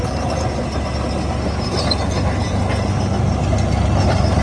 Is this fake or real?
real